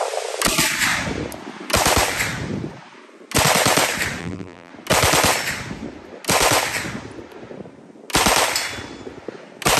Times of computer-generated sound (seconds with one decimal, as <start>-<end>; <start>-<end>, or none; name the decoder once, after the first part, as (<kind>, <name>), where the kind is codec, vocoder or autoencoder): 4.2-4.7 (vocoder, BigVGAN v2)